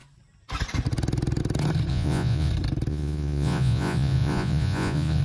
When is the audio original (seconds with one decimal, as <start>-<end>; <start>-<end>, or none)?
0.0-1.9; 2.5-2.9

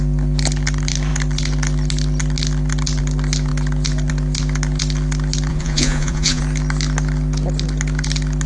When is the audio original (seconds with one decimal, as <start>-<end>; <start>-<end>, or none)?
0.0-5.5; 6.4-8.5